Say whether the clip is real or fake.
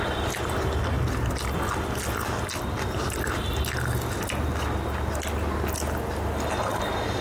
real